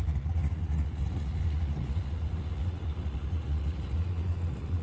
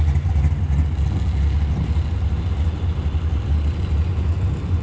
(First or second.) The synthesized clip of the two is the first